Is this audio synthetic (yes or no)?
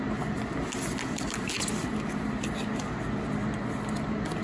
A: no